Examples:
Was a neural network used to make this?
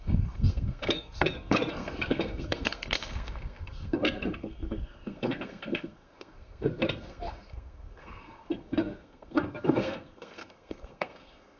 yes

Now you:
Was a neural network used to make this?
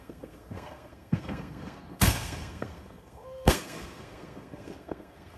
yes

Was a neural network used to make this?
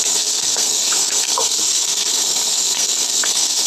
yes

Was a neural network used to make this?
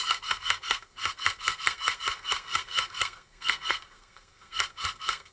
yes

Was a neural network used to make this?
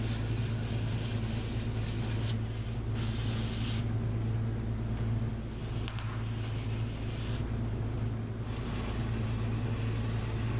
no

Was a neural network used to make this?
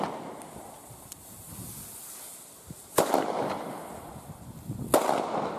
no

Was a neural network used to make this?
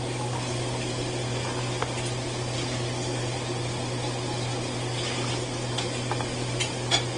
no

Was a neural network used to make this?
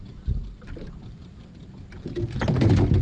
no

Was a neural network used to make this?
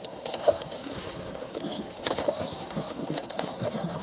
yes